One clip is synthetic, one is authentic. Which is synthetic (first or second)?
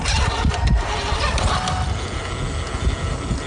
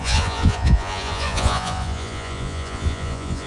second